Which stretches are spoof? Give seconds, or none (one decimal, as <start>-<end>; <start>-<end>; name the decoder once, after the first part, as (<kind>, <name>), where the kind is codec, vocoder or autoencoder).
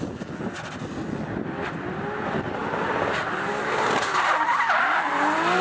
none